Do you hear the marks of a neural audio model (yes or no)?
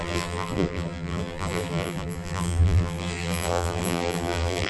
yes